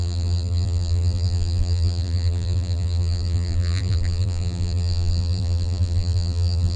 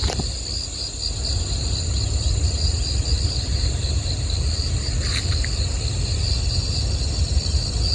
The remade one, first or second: first